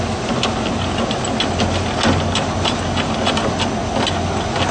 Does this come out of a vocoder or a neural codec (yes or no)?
no